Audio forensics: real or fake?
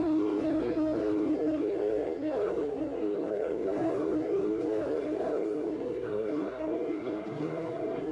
fake